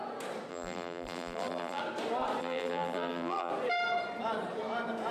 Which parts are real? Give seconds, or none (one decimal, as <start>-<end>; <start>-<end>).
0.0-0.5; 1.8-2.4; 3.5-5.1

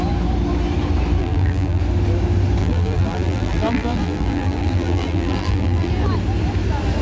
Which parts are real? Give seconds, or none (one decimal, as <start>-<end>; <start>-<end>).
0.0-1.2; 1.8-2.6; 5.9-7.0

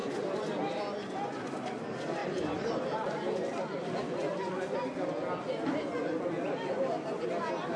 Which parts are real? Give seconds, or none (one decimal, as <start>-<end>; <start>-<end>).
0.7-2.2; 2.8-7.8

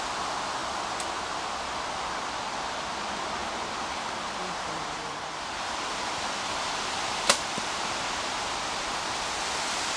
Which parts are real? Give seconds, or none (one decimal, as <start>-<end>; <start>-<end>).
0.0-3.4; 7.8-10.0

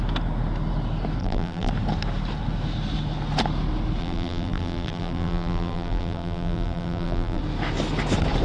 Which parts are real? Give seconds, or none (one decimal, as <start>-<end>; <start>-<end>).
0.0-1.2; 1.7-4.0; 7.4-8.4